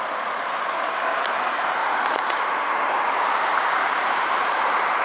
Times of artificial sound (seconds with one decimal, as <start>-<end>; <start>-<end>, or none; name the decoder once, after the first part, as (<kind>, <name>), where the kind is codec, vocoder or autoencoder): 1.8-5.0 (vocoder, BigVGAN v2)